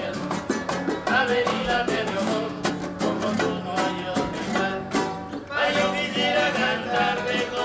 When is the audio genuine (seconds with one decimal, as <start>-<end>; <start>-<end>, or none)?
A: 0.0-1.5; 2.7-7.6